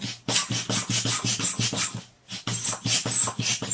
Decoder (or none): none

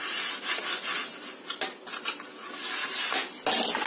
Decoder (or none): none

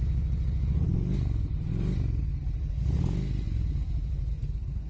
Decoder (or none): none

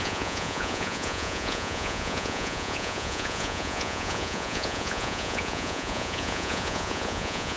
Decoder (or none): vocoder, Vocos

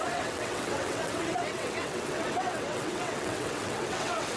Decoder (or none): vocoder, WaveNeXt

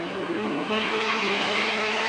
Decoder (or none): codec, SNAC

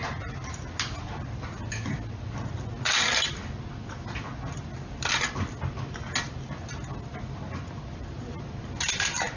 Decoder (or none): none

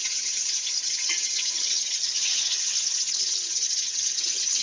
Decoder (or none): vocoder, HiFi-GAN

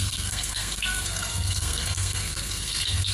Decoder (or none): codec, SNAC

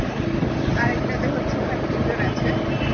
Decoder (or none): none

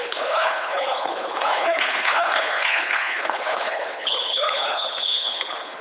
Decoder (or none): codec, HILCodec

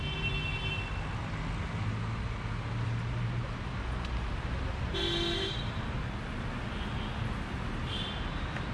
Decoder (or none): none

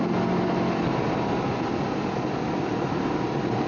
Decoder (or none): none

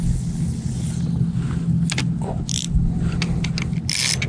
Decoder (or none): none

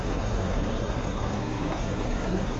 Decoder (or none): codec, SNAC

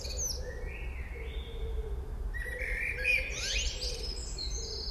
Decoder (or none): none